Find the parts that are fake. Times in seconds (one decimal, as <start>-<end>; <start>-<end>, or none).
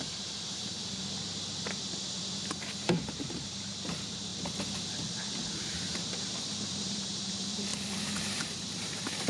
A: 0.0-0.8; 2.5-4.3; 5.5-7.7; 8.4-9.3